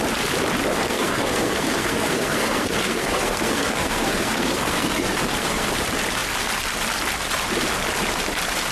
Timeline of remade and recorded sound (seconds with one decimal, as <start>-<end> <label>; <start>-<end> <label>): 0.0-0.7 recorded; 0.7-5.7 remade; 5.7-8.7 recorded